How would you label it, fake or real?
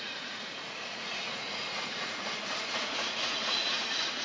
fake